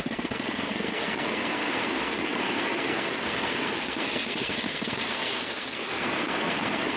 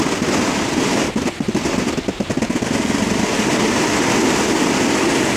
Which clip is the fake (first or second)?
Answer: first